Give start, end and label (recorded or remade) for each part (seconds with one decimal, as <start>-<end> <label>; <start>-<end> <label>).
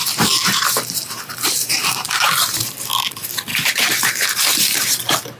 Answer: 0.0-2.8 remade; 2.8-3.5 recorded; 3.5-5.0 remade; 5.0-5.4 recorded